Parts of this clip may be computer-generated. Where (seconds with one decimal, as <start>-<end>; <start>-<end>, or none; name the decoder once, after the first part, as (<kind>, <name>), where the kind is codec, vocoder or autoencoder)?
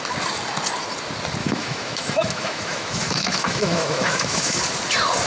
1.4-4.6 (autoencoder, DAC-VAE)